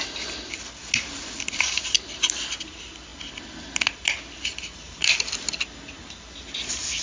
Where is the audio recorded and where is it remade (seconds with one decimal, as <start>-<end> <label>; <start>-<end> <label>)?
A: 0.0-7.0 recorded